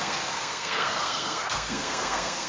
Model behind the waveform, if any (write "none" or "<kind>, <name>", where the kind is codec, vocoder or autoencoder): codec, SNAC